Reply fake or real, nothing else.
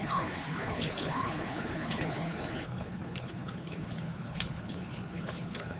fake